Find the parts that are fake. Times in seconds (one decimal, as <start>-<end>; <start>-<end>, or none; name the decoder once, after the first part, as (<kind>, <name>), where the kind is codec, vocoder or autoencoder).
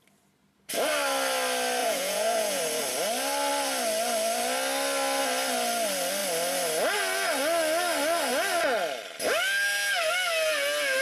1.8-2.6 (vocoder, Vocos)